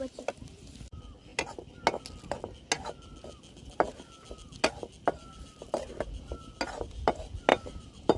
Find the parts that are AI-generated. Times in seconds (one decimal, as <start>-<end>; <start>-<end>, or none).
7.5-8.2